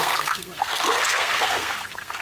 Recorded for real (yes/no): no